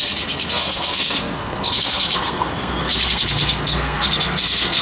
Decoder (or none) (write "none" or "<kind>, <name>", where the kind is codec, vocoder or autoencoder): codec, SNAC